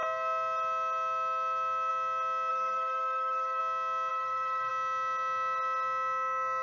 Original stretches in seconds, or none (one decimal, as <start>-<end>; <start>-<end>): 0.0-2.5; 3.6-4.1; 4.7-6.6